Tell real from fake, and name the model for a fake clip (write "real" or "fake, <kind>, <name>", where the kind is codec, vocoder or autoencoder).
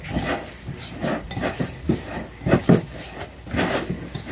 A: real